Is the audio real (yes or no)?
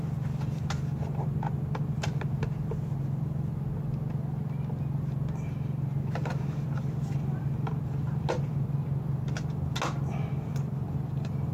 yes